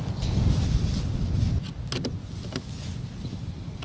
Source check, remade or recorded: recorded